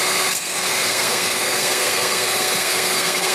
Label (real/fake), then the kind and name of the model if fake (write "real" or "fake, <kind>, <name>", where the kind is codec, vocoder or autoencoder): fake, codec, SNAC